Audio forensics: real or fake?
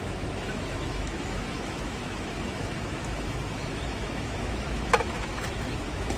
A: fake